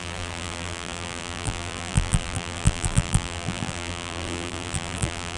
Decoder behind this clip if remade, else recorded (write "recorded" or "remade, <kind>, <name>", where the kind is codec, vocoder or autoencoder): remade, vocoder, BigVGAN v2